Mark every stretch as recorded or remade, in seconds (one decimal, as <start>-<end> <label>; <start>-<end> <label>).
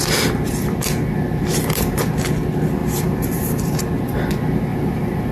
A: 0.0-1.5 recorded; 1.5-2.0 remade; 2.0-2.8 recorded; 2.8-3.8 remade; 3.8-4.7 recorded; 4.7-5.3 remade